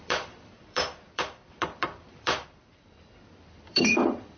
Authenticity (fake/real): fake